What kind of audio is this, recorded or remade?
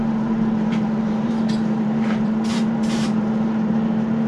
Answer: remade